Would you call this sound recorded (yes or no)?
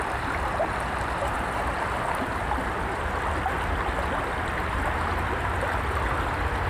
yes